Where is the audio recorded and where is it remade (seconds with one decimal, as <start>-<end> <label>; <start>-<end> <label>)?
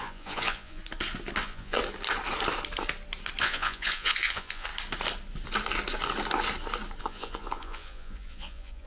0.0-0.8 remade; 0.8-1.4 recorded; 1.4-1.8 remade; 1.8-3.4 recorded; 3.4-4.7 remade; 4.7-7.0 recorded; 7.0-8.9 remade